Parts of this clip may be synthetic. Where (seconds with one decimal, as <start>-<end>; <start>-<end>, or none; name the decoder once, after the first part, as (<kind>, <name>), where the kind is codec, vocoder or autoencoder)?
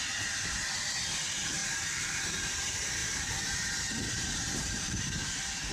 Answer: 1.6-2.2 (vocoder, BigVGAN v2); 3.0-5.7